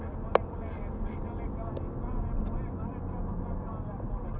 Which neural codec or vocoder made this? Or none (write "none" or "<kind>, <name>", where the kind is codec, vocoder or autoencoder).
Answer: none